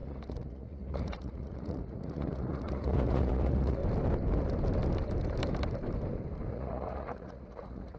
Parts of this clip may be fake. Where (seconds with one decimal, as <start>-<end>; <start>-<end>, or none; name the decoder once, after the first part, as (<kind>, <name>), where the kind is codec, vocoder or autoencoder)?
0.0-3.8 (vocoder, Vocos); 6.5-8.0